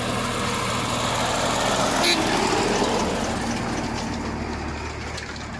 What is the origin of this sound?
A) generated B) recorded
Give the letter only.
B